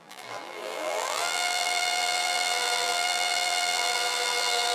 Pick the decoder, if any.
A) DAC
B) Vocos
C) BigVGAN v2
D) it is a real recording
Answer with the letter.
C